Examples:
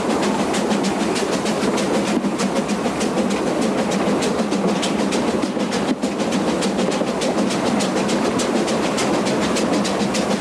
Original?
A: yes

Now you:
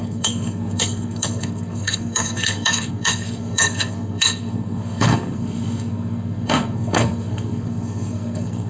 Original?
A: no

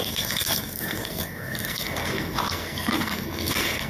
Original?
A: no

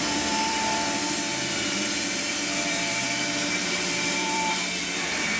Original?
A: no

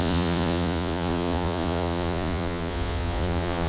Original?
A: no